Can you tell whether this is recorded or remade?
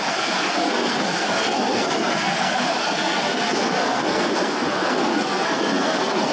remade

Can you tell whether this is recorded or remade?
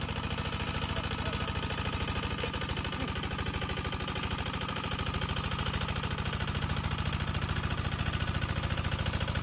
recorded